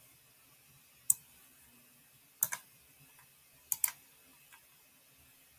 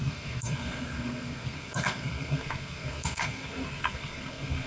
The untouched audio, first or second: first